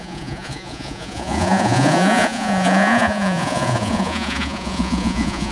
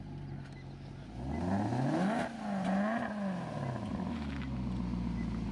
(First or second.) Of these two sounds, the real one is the second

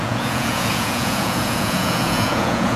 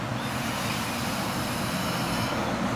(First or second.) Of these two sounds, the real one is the second